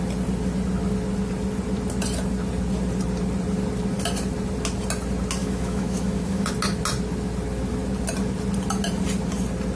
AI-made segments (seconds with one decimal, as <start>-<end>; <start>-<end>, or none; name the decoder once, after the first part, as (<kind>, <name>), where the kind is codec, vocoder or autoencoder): 5.4-6.5 (autoencoder, DAC-VAE)